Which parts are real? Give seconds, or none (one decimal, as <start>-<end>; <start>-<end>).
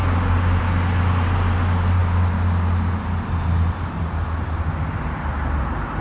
0.0-6.0